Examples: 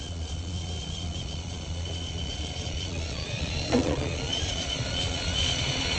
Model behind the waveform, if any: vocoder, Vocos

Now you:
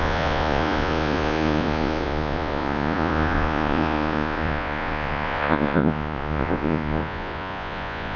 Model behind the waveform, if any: vocoder, Vocos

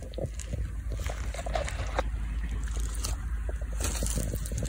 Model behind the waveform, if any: none